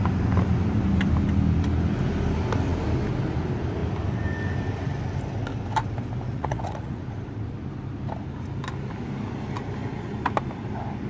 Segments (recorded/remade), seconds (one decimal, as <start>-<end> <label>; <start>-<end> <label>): 0.0-6.3 recorded; 6.3-7.0 remade; 7.0-11.1 recorded